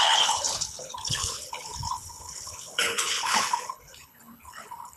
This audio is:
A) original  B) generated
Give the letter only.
B